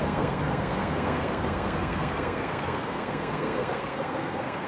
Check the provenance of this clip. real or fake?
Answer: fake